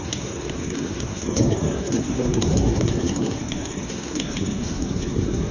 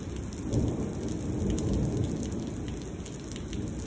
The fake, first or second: first